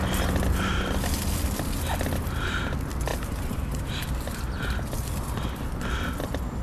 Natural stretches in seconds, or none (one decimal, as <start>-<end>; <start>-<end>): 0.0-3.1; 4.5-6.6